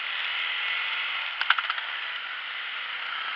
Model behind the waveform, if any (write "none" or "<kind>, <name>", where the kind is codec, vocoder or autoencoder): none